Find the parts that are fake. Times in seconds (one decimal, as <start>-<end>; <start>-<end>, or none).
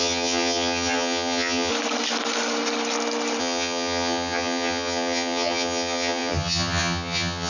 0.0-1.7; 3.4-7.5